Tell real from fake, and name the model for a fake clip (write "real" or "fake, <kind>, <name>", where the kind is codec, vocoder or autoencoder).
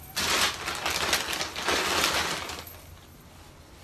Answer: real